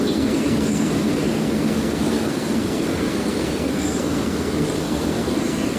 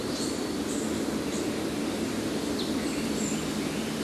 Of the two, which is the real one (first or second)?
second